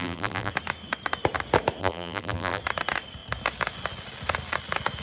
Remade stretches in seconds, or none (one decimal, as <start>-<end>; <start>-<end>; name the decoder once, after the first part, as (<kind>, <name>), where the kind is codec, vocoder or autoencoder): 0.0-0.5 (vocoder, BigVGAN v2); 1.8-2.6